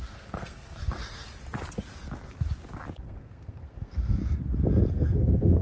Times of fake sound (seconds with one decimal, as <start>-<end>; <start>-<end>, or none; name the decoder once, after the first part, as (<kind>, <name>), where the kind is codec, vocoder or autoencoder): 0.0-1.0 (codec, SNAC); 3.0-4.2; 4.9-5.6